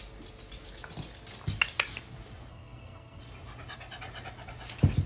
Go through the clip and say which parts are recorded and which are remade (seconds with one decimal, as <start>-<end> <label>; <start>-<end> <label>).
0.0-2.5 recorded; 2.5-3.2 remade; 3.2-5.1 recorded